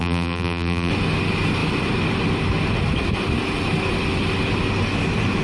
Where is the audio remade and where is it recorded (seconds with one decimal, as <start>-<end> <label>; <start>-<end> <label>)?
0.0-0.9 remade; 0.9-5.4 recorded